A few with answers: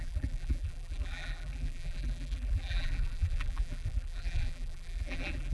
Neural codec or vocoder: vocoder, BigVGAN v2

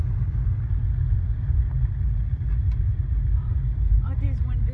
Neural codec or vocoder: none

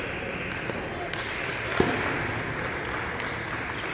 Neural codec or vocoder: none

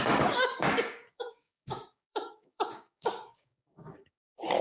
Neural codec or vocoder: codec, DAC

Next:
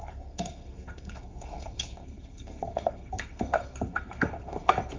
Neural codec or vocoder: codec, SNAC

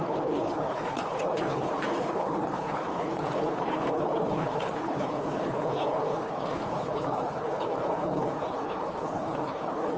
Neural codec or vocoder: codec, HILCodec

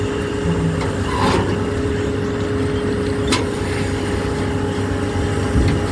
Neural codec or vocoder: none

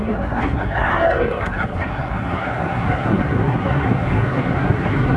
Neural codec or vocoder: codec, SNAC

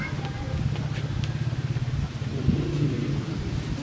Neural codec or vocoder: none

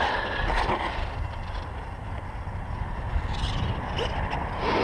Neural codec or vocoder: none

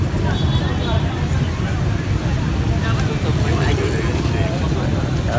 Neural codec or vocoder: vocoder, BigVGAN v2